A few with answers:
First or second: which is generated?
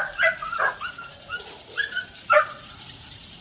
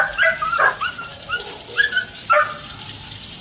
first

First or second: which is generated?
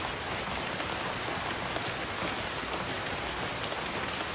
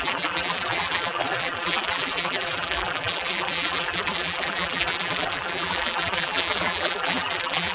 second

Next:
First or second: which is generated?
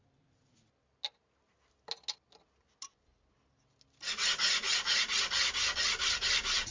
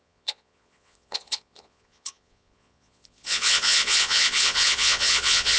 second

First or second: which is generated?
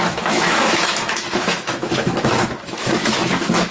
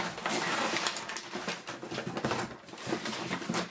first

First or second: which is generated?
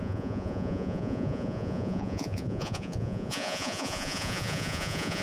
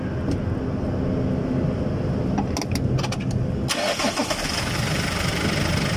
first